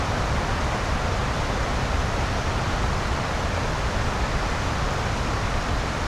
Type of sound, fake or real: real